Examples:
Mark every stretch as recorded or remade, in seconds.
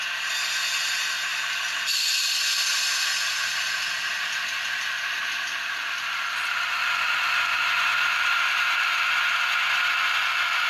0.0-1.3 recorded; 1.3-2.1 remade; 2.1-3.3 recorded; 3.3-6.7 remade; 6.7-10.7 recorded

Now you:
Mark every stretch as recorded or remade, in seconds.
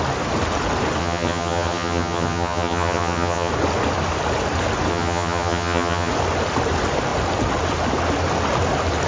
0.0-1.0 recorded; 1.0-3.5 remade; 3.5-4.9 recorded; 4.9-6.1 remade; 6.1-9.1 recorded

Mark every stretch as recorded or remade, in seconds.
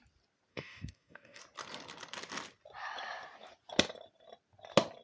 0.0-0.5 recorded; 0.5-1.4 remade; 1.4-5.0 recorded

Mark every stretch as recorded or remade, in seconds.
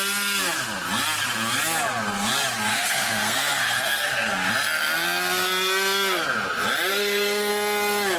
0.0-2.7 recorded; 2.7-4.5 remade; 4.5-6.9 recorded; 6.9-7.5 remade; 7.5-8.2 recorded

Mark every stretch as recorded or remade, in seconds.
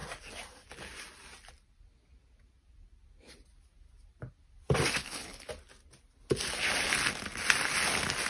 0.0-5.0 recorded; 5.0-5.5 remade; 5.5-8.3 recorded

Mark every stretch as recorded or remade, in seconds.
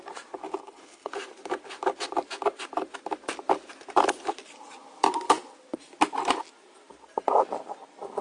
0.0-0.6 recorded; 0.6-1.1 remade; 1.1-8.2 recorded